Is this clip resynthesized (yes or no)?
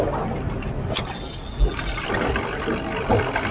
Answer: no